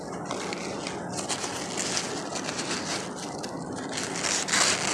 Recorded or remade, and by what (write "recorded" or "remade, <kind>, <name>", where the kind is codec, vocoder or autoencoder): recorded